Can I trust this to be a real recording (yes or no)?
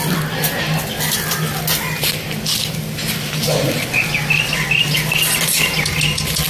yes